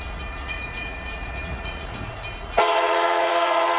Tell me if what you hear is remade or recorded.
remade